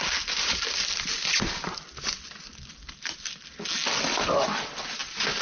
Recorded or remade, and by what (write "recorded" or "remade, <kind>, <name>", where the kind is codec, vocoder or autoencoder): recorded